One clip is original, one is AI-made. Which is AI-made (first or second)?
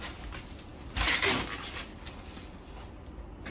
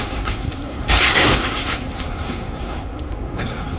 second